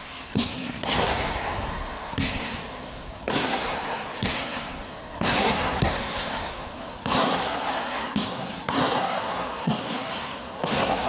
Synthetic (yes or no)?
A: yes